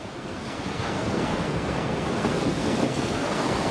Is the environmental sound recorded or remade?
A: remade